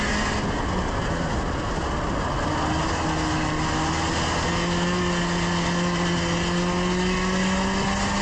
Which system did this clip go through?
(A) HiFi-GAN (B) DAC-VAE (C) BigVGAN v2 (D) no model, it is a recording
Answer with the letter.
D